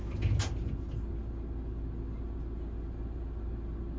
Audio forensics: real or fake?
real